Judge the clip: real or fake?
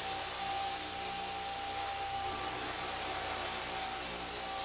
real